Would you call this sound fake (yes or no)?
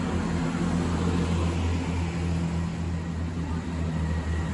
no